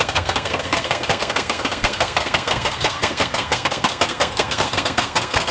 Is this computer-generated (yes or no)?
yes